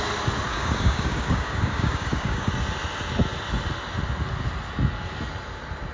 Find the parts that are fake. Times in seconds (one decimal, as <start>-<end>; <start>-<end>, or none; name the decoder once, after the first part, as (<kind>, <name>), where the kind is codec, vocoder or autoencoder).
0.5-2.5 (codec, DAC)